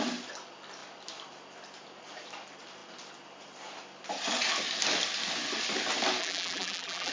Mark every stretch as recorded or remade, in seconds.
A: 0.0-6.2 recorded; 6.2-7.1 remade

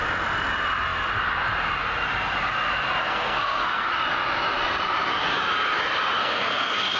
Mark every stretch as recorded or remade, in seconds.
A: 0.0-3.0 recorded; 3.0-3.9 remade; 3.9-6.2 recorded; 6.2-7.0 remade

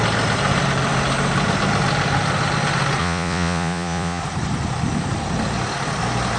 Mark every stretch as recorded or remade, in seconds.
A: 0.0-3.0 recorded; 3.0-4.2 remade; 4.2-6.4 recorded

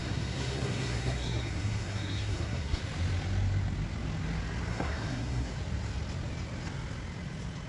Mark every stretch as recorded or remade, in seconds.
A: 0.0-2.8 remade; 2.8-4.7 recorded; 4.7-5.5 remade; 5.5-7.7 recorded